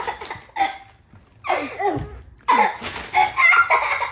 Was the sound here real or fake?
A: real